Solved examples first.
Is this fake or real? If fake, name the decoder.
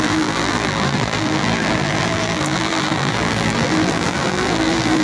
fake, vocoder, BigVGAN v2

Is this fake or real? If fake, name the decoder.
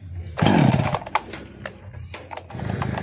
real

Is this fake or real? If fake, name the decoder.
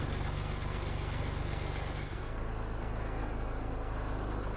fake, codec, SNAC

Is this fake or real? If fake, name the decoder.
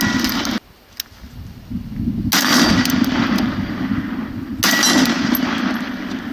real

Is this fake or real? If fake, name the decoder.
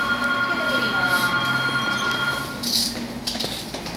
real